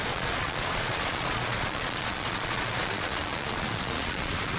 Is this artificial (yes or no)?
yes